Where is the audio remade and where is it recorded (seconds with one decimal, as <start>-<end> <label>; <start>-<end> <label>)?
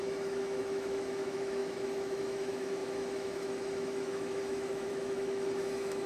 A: 0.0-6.1 remade